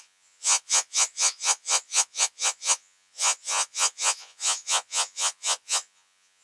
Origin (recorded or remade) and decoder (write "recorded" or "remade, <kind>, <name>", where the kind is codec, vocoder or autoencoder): remade, vocoder, Vocos